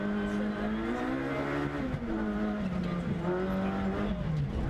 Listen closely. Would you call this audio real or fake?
real